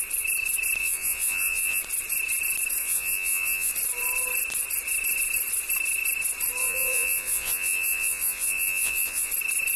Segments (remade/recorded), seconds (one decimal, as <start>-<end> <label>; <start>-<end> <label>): 0.0-0.8 recorded; 0.8-1.8 remade; 1.8-2.8 recorded; 2.8-3.7 remade; 3.7-6.6 recorded; 6.6-9.3 remade; 9.3-9.8 recorded